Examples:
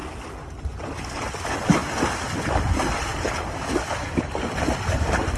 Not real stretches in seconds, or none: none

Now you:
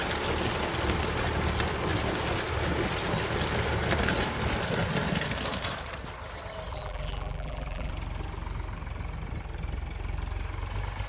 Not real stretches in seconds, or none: 6.7-7.9

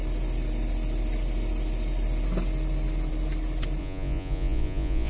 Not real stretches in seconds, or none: 3.8-5.1

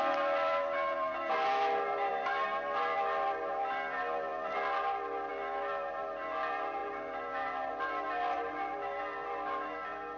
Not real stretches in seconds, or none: none